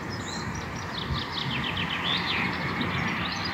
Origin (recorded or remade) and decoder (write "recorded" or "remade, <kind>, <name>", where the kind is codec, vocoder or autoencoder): recorded